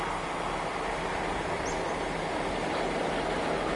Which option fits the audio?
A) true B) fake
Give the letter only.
A